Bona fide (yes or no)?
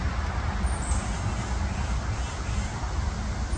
yes